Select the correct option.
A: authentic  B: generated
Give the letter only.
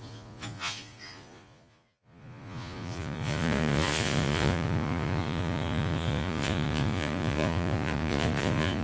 B